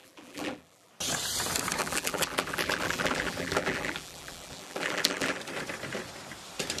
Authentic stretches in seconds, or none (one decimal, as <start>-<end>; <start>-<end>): 0.9-1.8; 5.4-6.8